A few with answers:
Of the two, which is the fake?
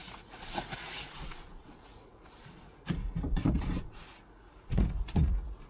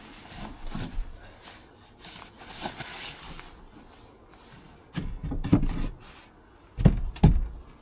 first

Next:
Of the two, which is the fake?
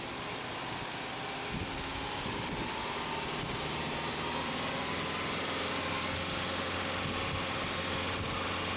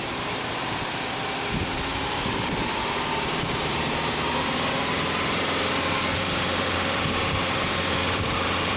second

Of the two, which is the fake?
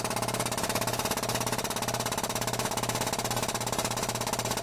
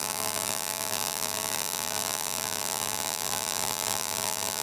second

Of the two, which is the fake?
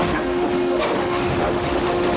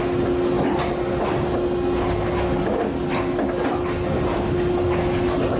first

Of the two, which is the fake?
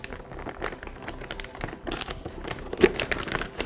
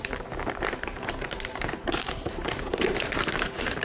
second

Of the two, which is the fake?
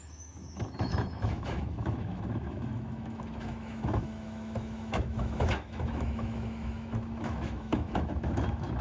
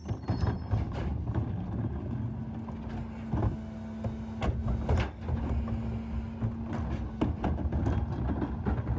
first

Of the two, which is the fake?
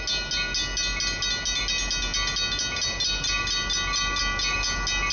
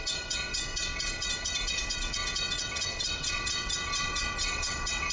second